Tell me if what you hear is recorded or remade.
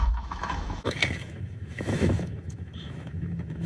remade